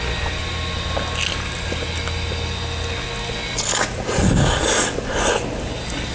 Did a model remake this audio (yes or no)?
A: no